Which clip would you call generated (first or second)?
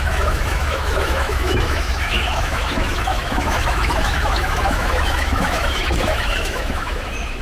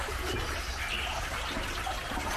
first